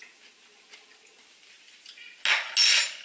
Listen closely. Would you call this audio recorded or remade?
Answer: recorded